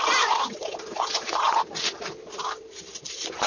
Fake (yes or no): no